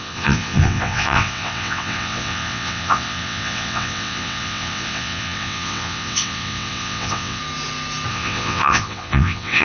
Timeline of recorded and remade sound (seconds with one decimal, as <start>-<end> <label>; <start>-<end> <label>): 0.0-7.4 remade; 7.4-8.1 recorded; 8.1-9.6 remade